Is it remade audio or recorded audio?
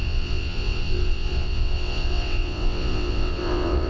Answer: remade